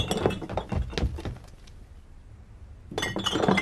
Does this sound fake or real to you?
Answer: real